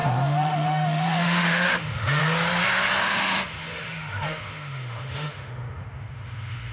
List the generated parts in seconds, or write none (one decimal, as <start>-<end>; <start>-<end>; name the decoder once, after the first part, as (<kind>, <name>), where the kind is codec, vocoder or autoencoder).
0.0-2.2 (autoencoder, DAC-VAE); 3.0-6.7